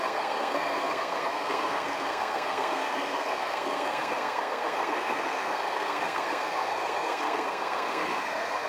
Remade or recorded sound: remade